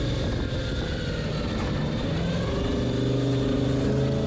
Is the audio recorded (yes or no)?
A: yes